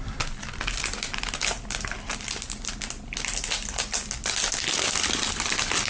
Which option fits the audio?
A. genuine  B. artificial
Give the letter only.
A